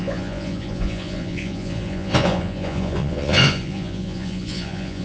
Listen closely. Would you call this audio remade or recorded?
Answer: remade